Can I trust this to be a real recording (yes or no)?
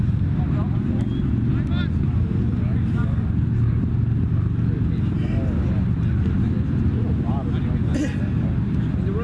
yes